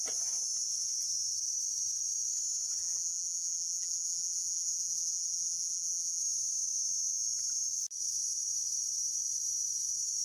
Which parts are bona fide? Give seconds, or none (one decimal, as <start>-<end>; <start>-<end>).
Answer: 0.0-2.8; 6.2-10.2